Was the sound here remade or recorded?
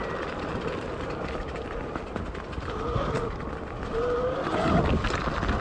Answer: recorded